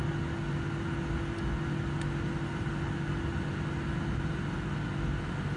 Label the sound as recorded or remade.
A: recorded